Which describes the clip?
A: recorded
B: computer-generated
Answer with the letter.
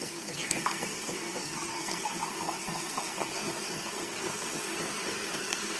B